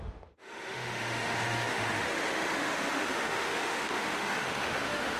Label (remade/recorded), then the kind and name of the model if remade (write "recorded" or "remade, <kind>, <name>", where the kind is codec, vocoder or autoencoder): remade, autoencoder, DAC-VAE